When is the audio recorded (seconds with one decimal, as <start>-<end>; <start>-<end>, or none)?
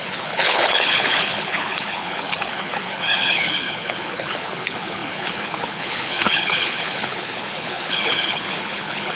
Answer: none